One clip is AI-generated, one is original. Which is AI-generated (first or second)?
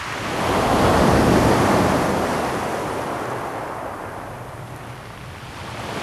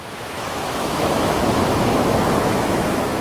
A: second